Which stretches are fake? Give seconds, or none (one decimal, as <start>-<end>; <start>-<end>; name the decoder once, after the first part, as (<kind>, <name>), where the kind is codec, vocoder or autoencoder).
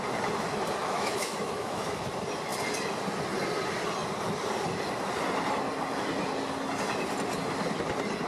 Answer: 0.8-2.1 (autoencoder, DAC-VAE)